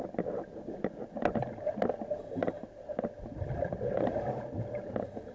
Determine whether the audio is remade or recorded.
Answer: recorded